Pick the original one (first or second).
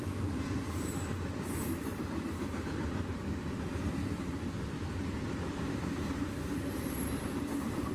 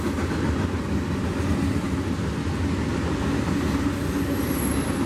second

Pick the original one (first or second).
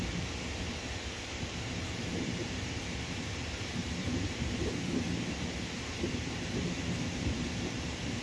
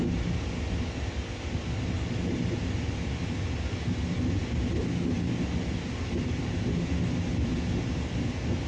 second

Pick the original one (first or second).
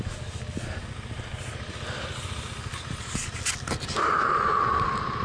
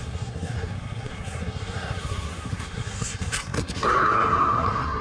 first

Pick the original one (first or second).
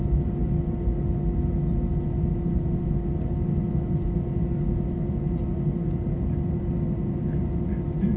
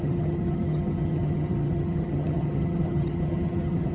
first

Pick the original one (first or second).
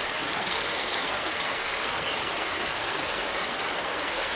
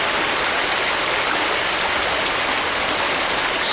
second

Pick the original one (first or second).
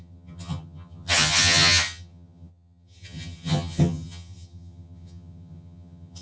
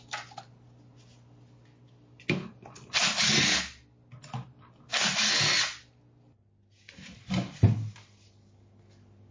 second